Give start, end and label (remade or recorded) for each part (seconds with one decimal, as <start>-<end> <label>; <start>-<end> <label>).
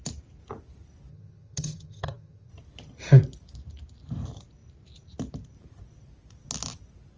0.0-1.1 recorded; 1.1-2.5 remade; 2.5-7.2 recorded